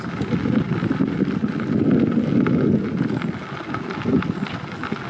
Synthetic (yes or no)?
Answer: no